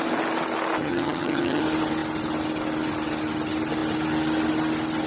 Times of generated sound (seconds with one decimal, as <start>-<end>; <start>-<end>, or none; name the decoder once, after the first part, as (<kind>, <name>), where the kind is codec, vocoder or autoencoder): 0.8-1.6 (vocoder, HiFi-GAN)